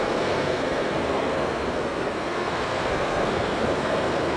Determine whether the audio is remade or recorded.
remade